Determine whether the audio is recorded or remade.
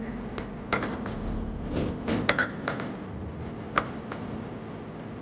recorded